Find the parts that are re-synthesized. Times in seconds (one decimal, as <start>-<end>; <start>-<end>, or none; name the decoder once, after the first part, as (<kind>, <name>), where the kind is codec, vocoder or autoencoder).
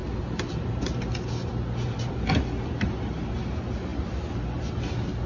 none